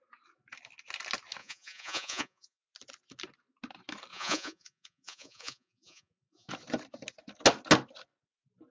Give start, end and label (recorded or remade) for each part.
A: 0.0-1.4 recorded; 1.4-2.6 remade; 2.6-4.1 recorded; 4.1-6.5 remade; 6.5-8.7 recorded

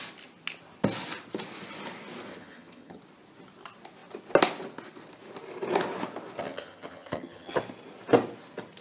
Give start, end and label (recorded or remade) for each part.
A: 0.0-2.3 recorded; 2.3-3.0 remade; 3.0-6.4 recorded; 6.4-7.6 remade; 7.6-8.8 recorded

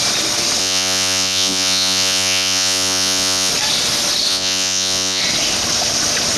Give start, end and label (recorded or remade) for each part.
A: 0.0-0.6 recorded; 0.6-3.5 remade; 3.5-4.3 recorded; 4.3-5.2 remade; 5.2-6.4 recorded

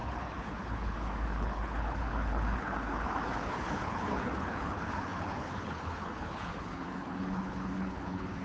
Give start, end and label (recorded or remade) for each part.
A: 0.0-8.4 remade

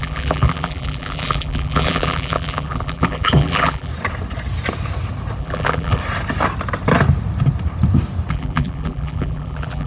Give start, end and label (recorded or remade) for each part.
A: 0.0-3.9 remade; 3.9-5.4 recorded; 5.4-6.0 remade; 6.0-8.3 recorded; 8.3-9.9 remade